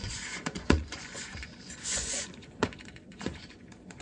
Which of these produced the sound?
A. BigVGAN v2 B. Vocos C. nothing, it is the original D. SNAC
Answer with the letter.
B